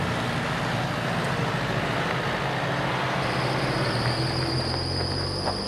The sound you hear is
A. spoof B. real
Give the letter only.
B